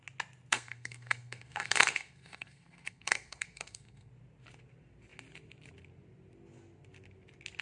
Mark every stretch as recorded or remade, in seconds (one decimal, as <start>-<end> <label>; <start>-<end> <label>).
0.0-0.5 recorded; 0.5-4.1 remade; 4.1-7.6 recorded